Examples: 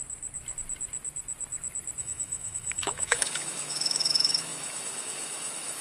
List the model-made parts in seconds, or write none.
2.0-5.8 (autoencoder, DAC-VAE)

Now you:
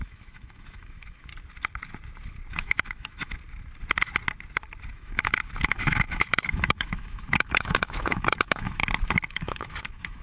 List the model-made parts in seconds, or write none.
0.0-1.3 (autoencoder, DAC-VAE); 2.5-3.3; 4.9-8.8; 9.3-10.2

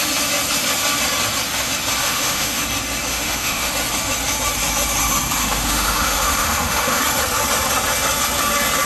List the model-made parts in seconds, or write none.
2.0-2.6 (autoencoder, DAC-VAE); 3.1-3.7; 5.4-7.0

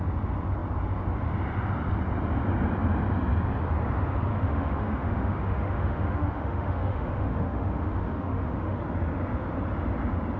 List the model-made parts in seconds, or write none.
4.3-8.8 (autoencoder, DAC-VAE)

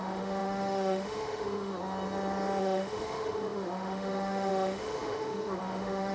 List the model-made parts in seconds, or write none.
0.0-1.7 (autoencoder, DAC-VAE); 2.6-6.1

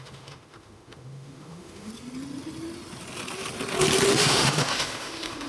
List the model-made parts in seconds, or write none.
0.0-1.9 (autoencoder, DAC-VAE); 4.1-5.5